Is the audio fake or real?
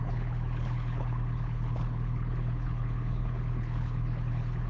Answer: fake